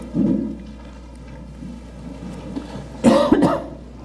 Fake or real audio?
real